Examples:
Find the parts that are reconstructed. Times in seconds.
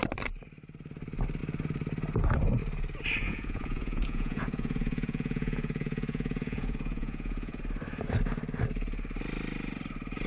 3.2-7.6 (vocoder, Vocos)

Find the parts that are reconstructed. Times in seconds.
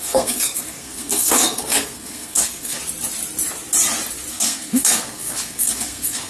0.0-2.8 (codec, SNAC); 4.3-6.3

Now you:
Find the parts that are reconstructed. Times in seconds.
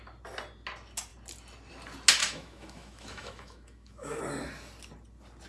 2.2-4.2 (autoencoder, DAC-VAE)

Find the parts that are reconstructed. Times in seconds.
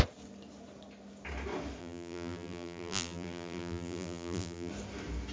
1.8-4.7 (vocoder, BigVGAN v2)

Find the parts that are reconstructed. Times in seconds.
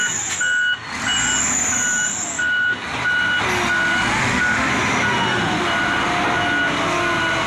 4.2-4.7 (autoencoder, DAC-VAE)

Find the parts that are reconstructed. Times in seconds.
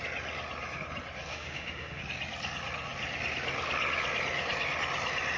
1.3-2.0 (autoencoder, DAC-VAE)